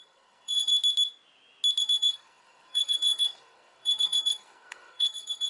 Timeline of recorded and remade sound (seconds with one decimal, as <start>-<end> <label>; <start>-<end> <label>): 0.0-0.7 remade; 0.7-1.8 recorded; 1.8-5.5 remade